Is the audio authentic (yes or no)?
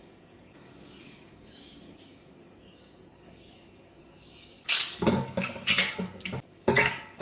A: no